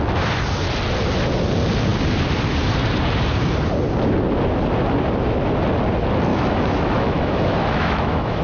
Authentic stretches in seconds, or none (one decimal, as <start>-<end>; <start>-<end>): 0.0-6.3